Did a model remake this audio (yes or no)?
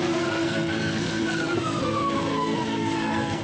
yes